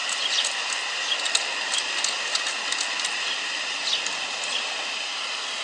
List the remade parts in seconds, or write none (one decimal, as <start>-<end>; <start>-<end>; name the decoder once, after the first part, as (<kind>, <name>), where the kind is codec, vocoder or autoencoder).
none

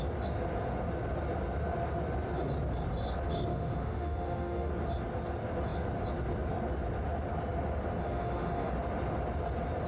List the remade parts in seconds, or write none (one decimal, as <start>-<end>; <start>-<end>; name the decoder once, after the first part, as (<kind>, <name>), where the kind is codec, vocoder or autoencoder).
3.5-4.7 (autoencoder, DAC-VAE); 8.0-8.7